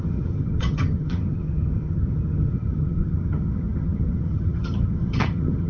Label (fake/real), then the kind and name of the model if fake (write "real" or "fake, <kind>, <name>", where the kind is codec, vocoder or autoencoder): fake, vocoder, HiFi-GAN